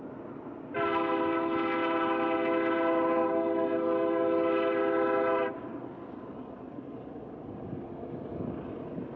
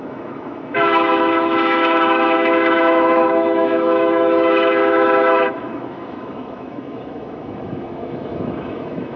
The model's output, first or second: second